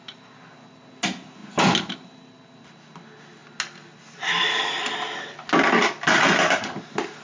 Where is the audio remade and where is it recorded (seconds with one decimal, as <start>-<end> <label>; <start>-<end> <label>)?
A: 0.0-7.2 recorded